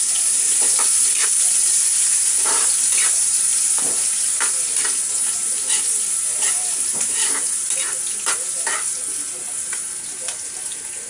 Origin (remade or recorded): remade